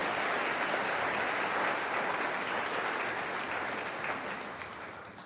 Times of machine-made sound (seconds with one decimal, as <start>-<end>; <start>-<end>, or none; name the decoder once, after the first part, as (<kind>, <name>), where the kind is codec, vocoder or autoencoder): none